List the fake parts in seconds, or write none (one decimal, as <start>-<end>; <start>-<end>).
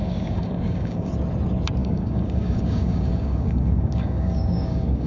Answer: 0.0-1.1; 1.8-5.1